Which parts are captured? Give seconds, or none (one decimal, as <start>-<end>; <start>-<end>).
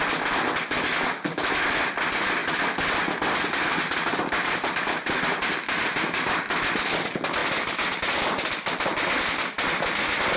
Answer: 0.0-2.4; 6.4-10.4